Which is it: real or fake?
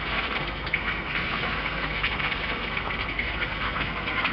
fake